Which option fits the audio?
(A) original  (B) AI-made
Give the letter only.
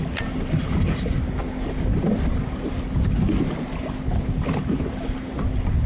A